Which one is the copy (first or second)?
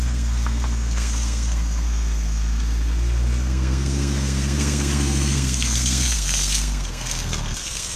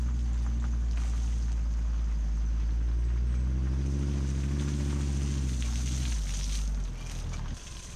first